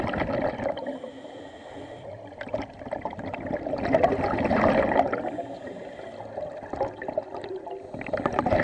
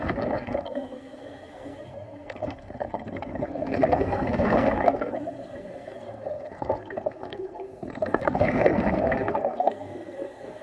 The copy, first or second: second